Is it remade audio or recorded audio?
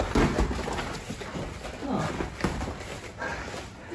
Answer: recorded